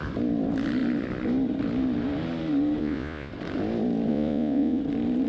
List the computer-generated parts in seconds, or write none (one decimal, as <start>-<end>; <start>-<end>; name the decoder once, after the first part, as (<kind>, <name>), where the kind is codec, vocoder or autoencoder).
2.8-3.3 (vocoder, Vocos); 4.1-4.8